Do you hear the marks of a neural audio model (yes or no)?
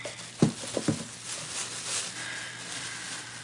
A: no